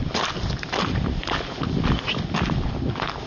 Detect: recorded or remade recorded